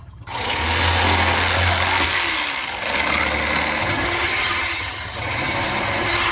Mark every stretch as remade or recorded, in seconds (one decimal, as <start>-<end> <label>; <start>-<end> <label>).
0.0-0.6 remade; 0.6-3.8 recorded; 3.8-6.3 remade

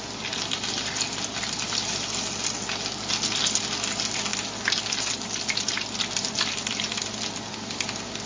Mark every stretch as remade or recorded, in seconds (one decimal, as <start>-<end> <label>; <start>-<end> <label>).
0.0-8.3 recorded

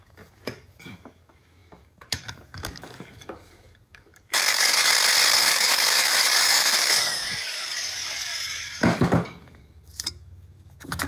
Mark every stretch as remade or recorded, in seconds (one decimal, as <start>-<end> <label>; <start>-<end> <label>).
0.0-4.9 remade; 4.9-5.4 recorded; 5.4-11.1 remade

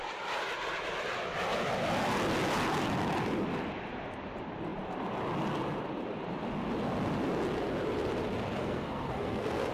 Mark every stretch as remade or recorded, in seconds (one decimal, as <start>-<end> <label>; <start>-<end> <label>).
0.0-8.6 recorded; 8.6-9.7 remade

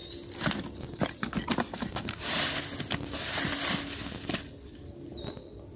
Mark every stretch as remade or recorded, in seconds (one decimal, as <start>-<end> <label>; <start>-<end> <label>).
0.0-5.8 recorded